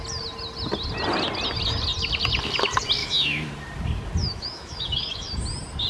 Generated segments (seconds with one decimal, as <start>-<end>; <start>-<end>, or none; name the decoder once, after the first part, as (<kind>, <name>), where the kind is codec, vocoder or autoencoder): 3.0-3.5 (autoencoder, DAC-VAE); 4.2-5.3